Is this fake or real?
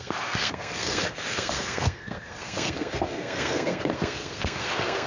fake